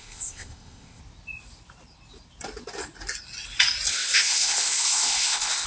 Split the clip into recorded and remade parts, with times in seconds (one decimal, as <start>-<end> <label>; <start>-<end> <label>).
0.0-1.0 remade; 1.0-3.9 recorded; 3.9-5.7 remade